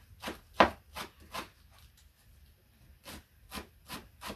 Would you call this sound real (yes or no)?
yes